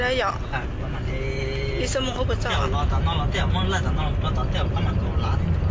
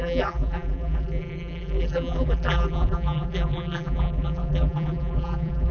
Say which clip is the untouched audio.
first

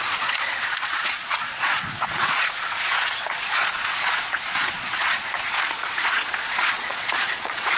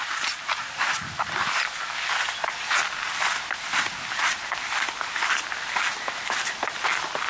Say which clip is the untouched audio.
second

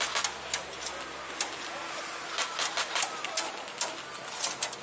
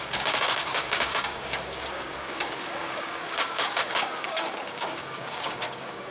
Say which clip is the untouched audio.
first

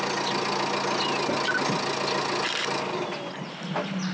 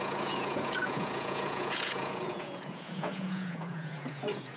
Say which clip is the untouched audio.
first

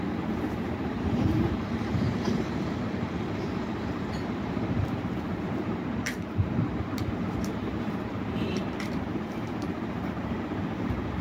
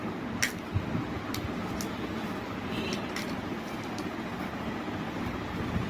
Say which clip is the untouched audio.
second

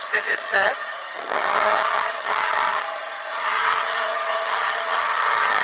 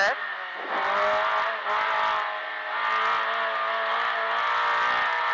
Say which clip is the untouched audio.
second